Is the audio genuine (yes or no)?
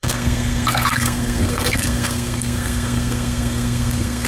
no